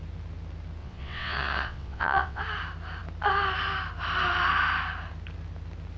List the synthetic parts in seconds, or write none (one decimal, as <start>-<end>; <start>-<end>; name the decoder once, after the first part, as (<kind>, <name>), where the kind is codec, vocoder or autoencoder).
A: 0.8-2.4 (vocoder, WaveNeXt)